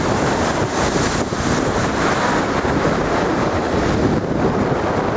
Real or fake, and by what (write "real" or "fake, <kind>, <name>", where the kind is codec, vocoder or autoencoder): real